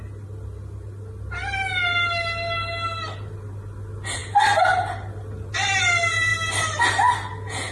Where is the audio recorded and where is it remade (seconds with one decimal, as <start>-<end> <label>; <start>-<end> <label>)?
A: 0.0-7.7 recorded